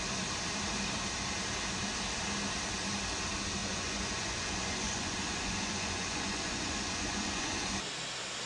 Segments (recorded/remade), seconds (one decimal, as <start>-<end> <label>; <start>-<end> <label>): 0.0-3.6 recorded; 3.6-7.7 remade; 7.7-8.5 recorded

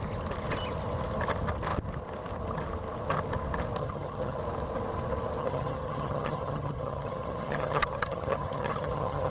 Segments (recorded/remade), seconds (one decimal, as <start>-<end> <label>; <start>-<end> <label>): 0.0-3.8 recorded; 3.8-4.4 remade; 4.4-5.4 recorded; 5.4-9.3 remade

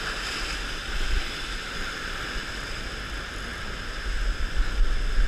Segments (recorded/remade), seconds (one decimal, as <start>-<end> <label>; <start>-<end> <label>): 0.0-0.8 recorded; 0.8-2.2 remade; 2.2-5.3 recorded

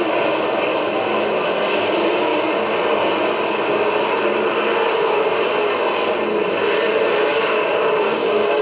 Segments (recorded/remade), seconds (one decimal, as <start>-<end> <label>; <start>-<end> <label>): 0.0-7.3 recorded; 7.3-8.6 remade

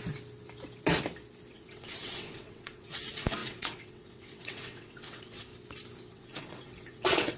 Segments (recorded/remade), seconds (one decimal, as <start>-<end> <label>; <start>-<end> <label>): 0.0-1.5 recorded; 1.5-5.5 remade; 5.5-6.1 recorded; 6.1-7.4 remade

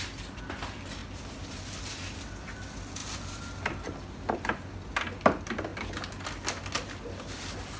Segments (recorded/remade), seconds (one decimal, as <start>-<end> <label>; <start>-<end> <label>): 0.0-7.8 recorded

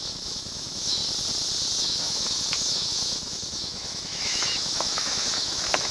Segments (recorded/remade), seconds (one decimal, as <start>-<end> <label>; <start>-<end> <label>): 0.0-1.0 remade; 1.0-1.8 recorded; 1.8-5.9 remade